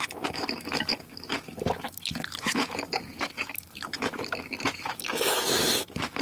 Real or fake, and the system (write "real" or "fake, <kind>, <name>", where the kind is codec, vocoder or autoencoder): fake, autoencoder, DAC-VAE